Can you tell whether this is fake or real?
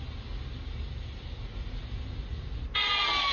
real